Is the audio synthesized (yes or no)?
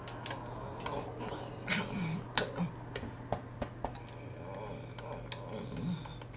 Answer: no